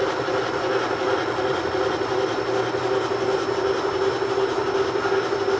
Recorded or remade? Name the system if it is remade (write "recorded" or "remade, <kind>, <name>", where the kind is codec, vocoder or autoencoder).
recorded